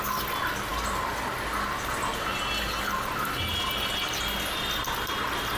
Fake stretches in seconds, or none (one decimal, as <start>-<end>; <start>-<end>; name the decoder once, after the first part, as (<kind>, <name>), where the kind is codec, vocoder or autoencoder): none